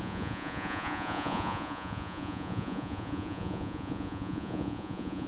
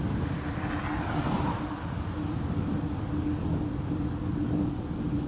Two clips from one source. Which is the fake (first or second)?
first